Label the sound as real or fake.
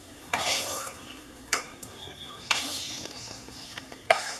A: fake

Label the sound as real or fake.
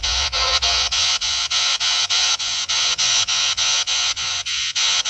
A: fake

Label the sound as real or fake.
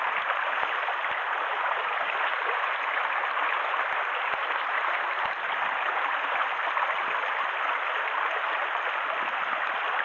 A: real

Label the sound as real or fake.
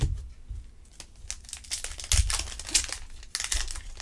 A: real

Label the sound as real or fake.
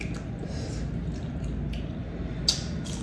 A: real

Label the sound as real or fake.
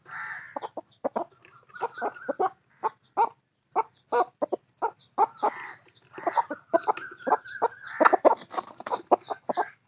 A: fake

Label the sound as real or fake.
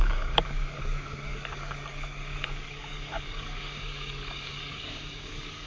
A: fake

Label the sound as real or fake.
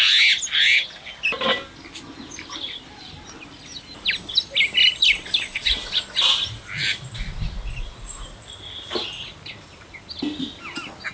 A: real